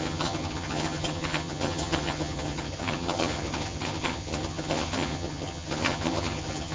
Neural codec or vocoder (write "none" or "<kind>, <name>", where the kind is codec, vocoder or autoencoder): vocoder, HiFi-GAN